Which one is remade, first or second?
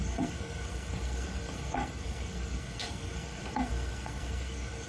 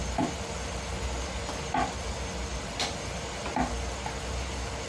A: first